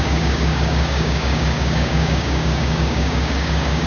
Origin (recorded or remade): remade